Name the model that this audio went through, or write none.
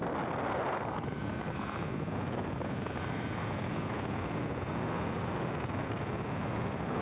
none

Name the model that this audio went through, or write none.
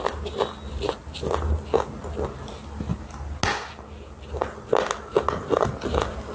none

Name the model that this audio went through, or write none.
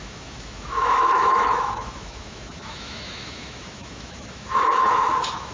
autoencoder, DAC-VAE